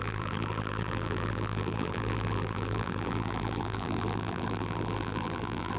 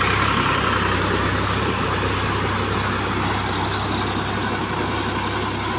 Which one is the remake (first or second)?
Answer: first